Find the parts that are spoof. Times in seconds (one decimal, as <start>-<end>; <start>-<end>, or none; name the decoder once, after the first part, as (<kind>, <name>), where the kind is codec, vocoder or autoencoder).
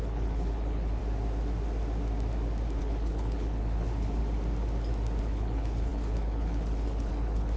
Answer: 0.0-1.0 (codec, HILCodec); 2.8-4.2; 5.2-7.6